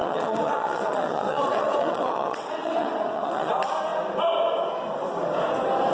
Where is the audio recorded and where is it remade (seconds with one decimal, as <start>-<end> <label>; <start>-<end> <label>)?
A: 0.0-3.5 remade; 3.5-5.9 recorded